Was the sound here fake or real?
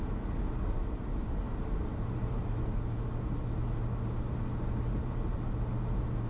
real